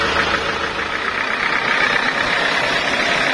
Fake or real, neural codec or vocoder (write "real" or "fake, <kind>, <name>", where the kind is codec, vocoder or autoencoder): real